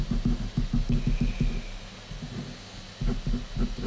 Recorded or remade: recorded